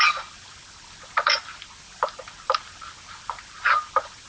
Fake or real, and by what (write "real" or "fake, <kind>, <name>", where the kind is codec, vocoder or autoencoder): fake, vocoder, BigVGAN v2